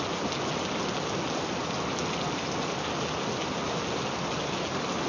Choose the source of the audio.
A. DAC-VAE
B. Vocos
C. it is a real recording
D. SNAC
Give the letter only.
C